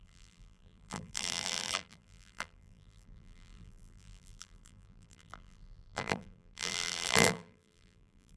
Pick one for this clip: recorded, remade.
remade